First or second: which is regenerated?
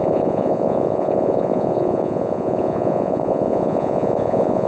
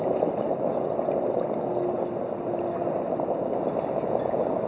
first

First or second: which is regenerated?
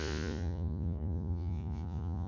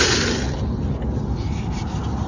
first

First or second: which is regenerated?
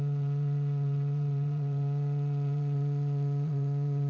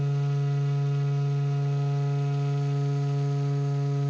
first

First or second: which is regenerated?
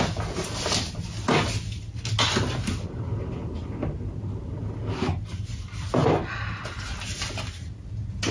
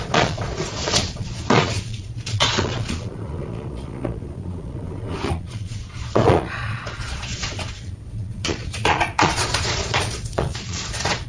second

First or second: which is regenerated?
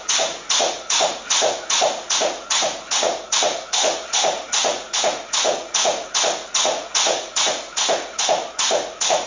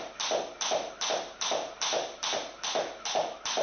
first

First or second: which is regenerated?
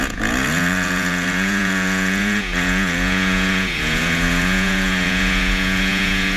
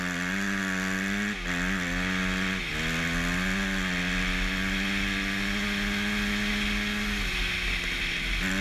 first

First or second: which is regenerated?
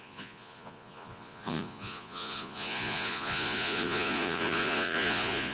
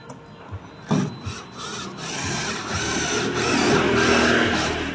first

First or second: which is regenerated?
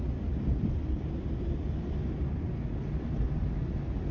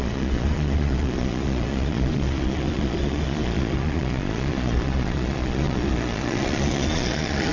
second